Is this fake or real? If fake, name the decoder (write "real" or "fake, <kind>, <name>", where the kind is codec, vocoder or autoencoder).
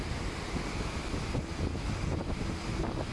real